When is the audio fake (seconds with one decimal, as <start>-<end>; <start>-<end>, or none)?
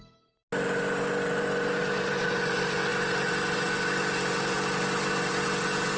none